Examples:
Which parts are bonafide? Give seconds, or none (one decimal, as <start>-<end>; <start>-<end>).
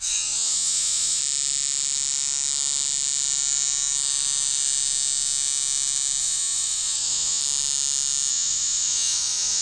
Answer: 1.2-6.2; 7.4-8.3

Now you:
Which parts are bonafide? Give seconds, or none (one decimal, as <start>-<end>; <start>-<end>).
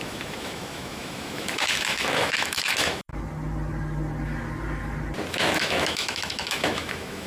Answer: 3.1-5.3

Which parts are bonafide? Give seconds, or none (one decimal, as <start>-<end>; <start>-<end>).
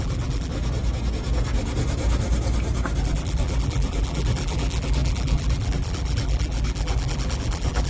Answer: 0.5-3.0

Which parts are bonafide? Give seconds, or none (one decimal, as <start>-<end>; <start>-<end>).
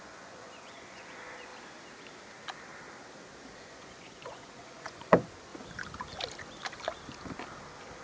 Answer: 1.5-3.6; 5.5-8.0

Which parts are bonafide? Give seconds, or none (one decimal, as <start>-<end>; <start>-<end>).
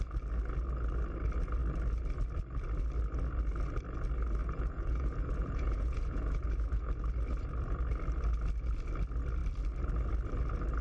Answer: 0.0-4.4; 6.9-10.8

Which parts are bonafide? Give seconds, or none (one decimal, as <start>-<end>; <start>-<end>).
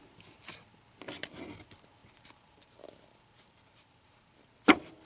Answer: 0.0-5.1